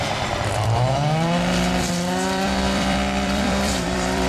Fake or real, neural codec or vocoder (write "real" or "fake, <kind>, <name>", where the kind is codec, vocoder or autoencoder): fake, vocoder, BigVGAN v2